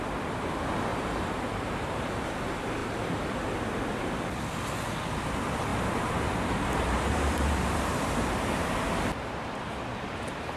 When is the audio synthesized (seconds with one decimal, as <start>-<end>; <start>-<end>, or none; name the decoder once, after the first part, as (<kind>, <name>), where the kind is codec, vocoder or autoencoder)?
0.9-2.2 (vocoder, BigVGAN v2); 5.7-8.7